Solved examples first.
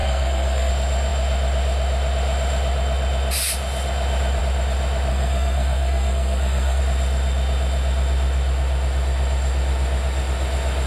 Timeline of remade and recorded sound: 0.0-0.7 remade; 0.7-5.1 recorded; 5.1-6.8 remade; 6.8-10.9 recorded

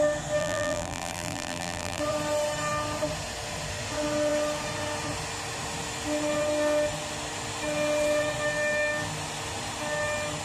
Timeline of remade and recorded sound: 0.0-0.4 recorded; 0.4-2.0 remade; 2.0-10.4 recorded

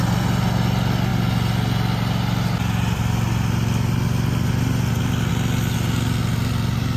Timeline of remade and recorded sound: 0.0-7.0 recorded

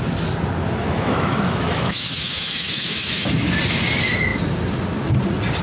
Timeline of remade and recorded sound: 0.0-0.8 recorded; 0.8-3.3 remade; 3.3-5.6 recorded

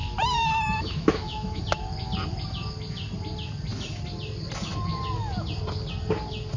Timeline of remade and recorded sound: 0.0-1.6 remade; 1.6-6.6 recorded